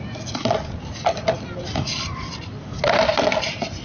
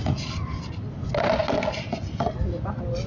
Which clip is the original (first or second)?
second